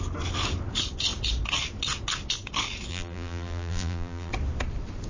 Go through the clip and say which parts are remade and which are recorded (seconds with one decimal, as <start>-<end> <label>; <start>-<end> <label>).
0.0-2.9 recorded; 2.9-4.3 remade; 4.3-5.1 recorded